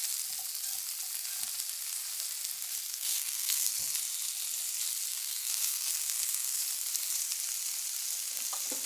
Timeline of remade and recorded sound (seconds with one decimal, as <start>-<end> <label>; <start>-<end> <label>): 0.0-2.9 recorded; 2.9-3.7 remade; 3.7-5.1 recorded; 5.1-6.6 remade; 6.6-8.9 recorded